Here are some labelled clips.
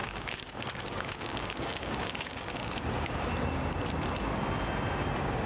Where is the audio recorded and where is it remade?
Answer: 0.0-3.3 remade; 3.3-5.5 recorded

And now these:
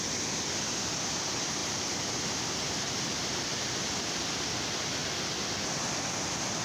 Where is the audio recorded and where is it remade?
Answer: 0.0-6.6 recorded

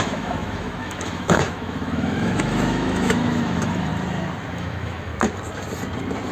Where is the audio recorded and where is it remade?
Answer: 0.0-3.9 remade; 3.9-4.5 recorded; 4.5-5.1 remade; 5.1-6.3 recorded

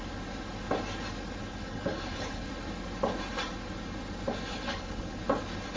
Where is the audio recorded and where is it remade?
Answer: 0.0-1.4 recorded; 1.4-2.5 remade; 2.5-4.5 recorded; 4.5-5.2 remade; 5.2-5.8 recorded

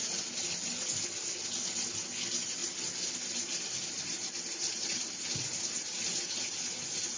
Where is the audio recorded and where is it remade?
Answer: 0.0-7.2 recorded

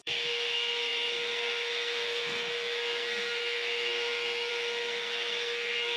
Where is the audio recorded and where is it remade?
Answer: 0.0-6.0 remade